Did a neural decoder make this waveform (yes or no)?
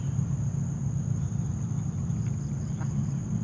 yes